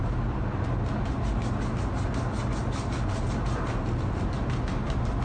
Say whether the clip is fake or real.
real